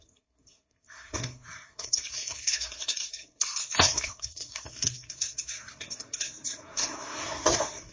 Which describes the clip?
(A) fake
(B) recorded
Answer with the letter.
A